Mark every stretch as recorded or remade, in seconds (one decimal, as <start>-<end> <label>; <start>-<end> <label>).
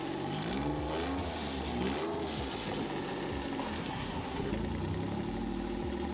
0.0-3.8 recorded; 3.8-4.5 remade; 4.5-6.1 recorded